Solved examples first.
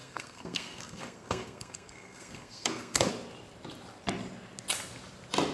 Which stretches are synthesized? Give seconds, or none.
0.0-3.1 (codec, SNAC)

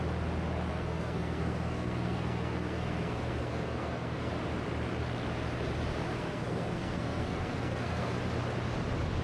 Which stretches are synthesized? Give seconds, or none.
0.7-4.3 (codec, SNAC); 6.1-8.2

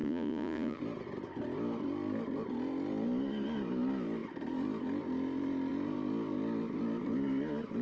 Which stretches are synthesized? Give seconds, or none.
0.0-0.8 (vocoder, Vocos)

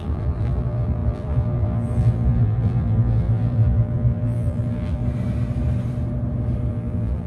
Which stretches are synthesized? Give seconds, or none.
0.0-5.0 (vocoder, BigVGAN v2); 6.7-7.3

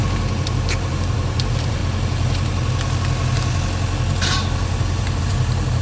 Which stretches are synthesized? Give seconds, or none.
0.9-1.8 (vocoder, BigVGAN v2); 5.2-5.8